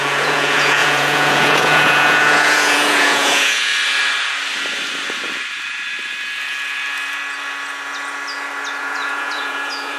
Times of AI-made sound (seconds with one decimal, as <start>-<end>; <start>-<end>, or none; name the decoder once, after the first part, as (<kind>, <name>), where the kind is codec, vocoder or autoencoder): 0.0-3.7 (vocoder, Vocos); 8.8-10.0